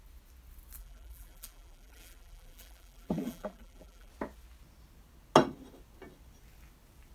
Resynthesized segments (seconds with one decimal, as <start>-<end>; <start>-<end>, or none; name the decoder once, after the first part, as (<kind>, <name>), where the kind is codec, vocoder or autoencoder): 0.8-4.1 (vocoder, BigVGAN v2)